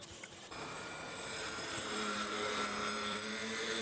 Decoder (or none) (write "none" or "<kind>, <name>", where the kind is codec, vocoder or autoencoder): vocoder, BigVGAN v2